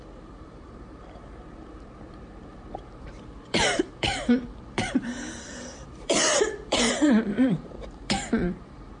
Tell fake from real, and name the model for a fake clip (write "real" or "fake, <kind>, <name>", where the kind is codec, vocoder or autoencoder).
fake, vocoder, BigVGAN v2